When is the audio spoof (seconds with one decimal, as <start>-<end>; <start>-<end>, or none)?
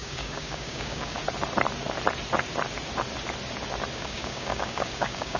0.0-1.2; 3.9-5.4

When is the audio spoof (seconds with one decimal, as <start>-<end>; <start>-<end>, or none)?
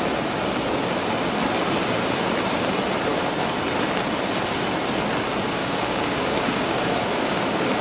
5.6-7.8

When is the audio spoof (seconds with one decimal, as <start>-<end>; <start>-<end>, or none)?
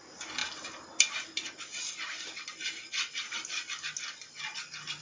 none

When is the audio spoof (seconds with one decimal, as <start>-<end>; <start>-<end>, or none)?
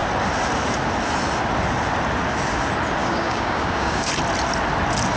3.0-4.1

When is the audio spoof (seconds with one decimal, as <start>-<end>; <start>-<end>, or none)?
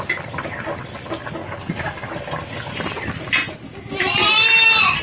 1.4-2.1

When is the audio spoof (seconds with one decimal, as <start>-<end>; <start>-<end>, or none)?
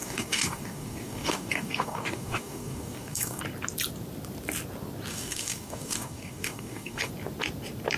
0.0-3.4; 5.1-7.1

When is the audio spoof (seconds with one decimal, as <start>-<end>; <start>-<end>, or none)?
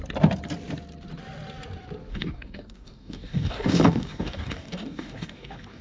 2.1-5.8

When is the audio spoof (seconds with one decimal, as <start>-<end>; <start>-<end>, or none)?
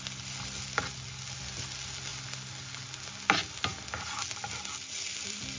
none